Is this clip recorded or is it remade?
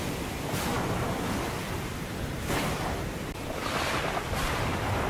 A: recorded